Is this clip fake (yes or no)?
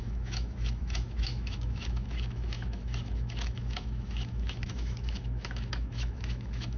yes